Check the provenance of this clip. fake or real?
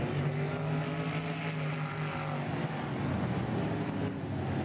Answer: real